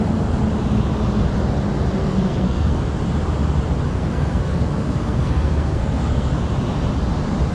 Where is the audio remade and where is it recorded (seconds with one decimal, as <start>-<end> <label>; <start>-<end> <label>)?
0.0-2.0 recorded; 2.0-2.8 remade; 2.8-3.9 recorded; 3.9-6.4 remade; 6.4-7.5 recorded

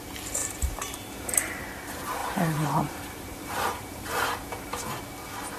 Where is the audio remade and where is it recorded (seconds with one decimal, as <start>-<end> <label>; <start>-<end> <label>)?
0.0-0.4 recorded; 0.4-1.6 remade; 1.6-2.2 recorded; 2.2-5.0 remade; 5.0-5.6 recorded

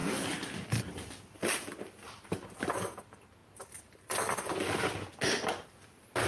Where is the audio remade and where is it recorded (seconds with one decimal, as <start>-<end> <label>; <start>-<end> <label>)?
0.0-6.3 recorded

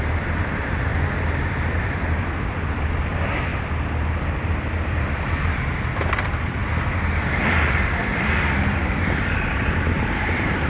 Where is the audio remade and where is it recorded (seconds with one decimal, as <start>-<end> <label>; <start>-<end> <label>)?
0.0-0.9 remade; 0.9-1.8 recorded; 1.8-3.5 remade; 3.5-6.1 recorded; 6.1-6.6 remade; 6.6-8.8 recorded; 8.8-10.7 remade

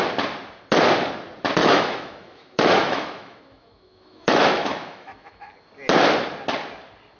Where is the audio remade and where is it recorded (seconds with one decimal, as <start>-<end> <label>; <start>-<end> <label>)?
0.0-1.6 recorded; 1.6-5.5 remade; 5.5-7.2 recorded

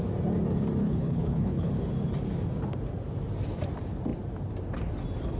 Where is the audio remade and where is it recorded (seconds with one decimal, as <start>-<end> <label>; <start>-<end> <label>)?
0.0-0.8 recorded; 0.8-1.7 remade; 1.7-5.4 recorded

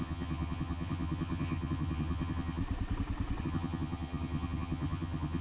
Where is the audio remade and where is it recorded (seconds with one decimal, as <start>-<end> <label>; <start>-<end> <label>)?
0.0-2.6 remade; 2.6-3.4 recorded; 3.4-5.4 remade

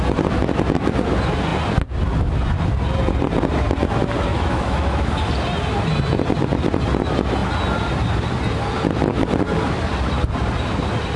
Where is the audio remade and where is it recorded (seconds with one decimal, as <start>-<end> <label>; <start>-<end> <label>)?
0.0-4.3 recorded; 4.3-5.1 remade; 5.1-11.2 recorded